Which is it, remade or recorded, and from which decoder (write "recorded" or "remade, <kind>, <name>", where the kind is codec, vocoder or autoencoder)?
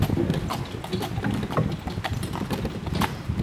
recorded